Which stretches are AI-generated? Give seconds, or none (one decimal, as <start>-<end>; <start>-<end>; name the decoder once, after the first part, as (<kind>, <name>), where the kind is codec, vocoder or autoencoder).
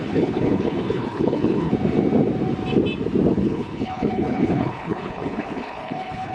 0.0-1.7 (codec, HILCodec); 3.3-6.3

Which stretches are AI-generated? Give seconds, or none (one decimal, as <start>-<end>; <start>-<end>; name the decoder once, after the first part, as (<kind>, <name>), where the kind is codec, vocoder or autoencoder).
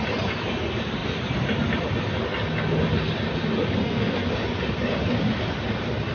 3.8-4.3 (codec, SNAC)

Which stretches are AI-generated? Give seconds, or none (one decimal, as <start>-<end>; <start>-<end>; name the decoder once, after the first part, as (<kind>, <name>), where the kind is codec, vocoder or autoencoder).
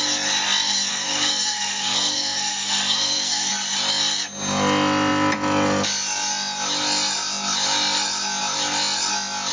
0.9-3.5 (codec, SNAC)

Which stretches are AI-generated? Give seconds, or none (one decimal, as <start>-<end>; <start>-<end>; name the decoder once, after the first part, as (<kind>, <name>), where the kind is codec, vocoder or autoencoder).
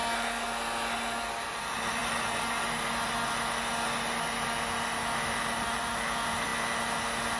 1.3-2.0 (vocoder, BigVGAN v2); 5.8-6.5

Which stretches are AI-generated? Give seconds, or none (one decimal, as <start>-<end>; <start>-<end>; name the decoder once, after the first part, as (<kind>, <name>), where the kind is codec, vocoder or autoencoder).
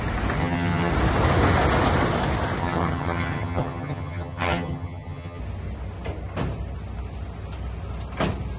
0.4-0.9 (vocoder, HiFi-GAN); 2.6-5.4